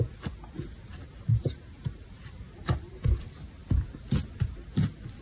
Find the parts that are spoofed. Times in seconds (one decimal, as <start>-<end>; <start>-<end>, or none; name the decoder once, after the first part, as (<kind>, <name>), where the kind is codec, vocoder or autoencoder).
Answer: 0.9-3.2 (vocoder, BigVGAN v2)